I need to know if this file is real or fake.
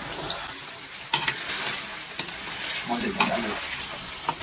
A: real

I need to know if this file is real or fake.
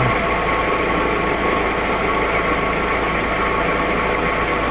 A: real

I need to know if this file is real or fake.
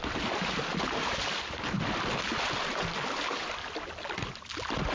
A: real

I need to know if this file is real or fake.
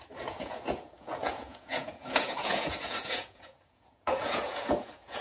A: fake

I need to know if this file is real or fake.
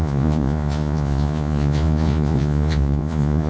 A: fake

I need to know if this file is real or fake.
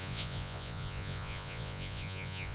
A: fake